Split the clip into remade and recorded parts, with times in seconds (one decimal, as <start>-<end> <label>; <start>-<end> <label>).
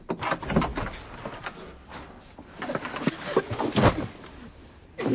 0.0-5.1 recorded